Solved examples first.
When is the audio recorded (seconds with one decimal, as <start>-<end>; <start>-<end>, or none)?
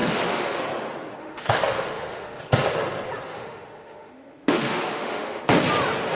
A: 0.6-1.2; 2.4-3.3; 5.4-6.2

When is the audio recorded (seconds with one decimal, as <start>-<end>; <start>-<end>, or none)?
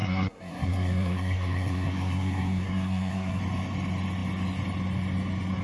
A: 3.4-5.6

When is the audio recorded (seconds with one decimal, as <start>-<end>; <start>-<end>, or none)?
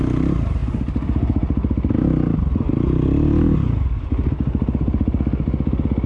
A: 0.0-6.1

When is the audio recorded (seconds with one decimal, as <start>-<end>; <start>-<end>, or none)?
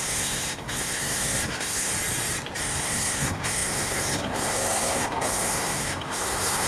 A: 1.9-2.6